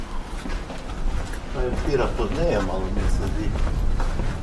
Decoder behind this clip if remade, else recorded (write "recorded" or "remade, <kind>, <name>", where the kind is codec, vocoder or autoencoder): recorded